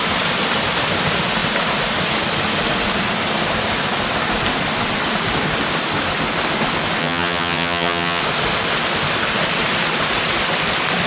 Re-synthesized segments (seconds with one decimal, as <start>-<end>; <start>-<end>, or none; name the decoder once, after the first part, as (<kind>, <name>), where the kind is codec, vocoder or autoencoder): 7.0-8.2 (vocoder, HiFi-GAN)